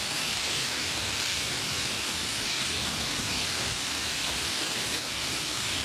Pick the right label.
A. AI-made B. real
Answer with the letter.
A